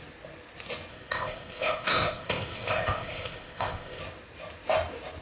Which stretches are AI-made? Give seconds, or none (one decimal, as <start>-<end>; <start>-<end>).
0.9-4.0